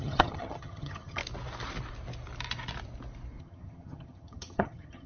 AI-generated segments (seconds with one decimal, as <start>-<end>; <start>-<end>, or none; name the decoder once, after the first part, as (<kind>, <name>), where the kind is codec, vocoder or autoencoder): 0.0-1.2 (vocoder, HiFi-GAN); 3.4-5.1